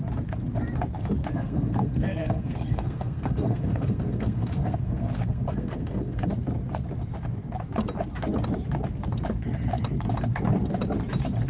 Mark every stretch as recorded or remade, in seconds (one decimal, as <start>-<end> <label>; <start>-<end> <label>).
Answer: 0.0-1.3 recorded; 1.3-6.3 remade; 6.3-11.5 recorded